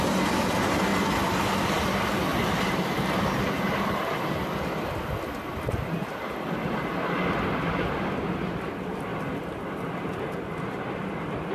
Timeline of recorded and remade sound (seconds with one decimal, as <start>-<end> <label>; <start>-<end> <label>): 0.0-11.5 recorded